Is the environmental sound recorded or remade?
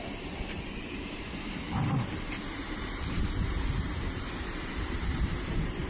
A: remade